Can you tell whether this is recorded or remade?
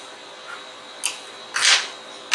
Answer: recorded